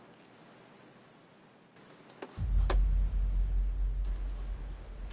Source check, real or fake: real